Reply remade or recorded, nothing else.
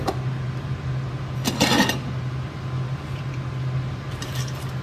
recorded